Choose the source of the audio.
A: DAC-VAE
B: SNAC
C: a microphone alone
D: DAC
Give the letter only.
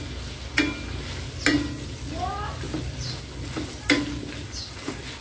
C